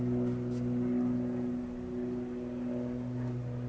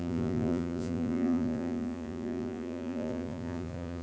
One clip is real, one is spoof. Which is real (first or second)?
first